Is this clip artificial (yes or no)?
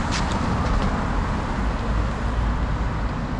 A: no